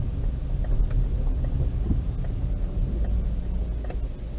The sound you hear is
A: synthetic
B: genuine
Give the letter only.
B